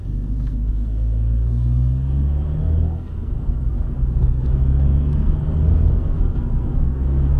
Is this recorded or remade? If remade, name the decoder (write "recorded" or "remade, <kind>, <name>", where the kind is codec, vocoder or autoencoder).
remade, codec, SNAC